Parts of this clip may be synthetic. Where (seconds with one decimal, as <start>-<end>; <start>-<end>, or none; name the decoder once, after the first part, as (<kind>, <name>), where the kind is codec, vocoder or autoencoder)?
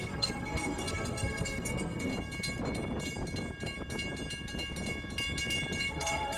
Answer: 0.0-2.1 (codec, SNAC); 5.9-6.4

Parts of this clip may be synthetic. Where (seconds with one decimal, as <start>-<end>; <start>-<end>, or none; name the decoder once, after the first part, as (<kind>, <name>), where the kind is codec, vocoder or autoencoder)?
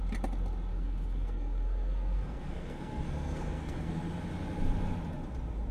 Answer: 0.7-4.0 (codec, SNAC)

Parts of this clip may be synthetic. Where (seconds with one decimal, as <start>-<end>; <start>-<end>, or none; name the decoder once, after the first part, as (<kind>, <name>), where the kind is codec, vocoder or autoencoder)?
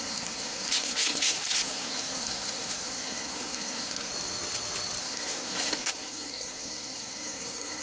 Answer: 0.0-4.1 (codec, SNAC); 5.0-7.8